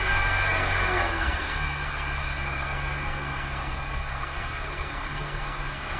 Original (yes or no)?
no